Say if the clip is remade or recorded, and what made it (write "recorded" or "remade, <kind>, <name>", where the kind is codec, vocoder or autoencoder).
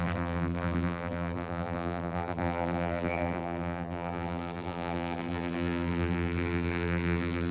remade, vocoder, BigVGAN v2